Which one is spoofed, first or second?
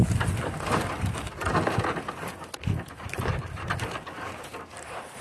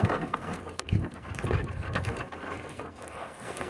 second